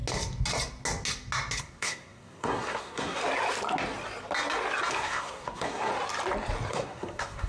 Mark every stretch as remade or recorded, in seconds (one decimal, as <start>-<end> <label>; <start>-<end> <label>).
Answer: 0.0-1.6 recorded; 1.6-3.2 remade; 3.2-4.9 recorded; 4.9-5.9 remade; 5.9-6.7 recorded; 6.7-7.5 remade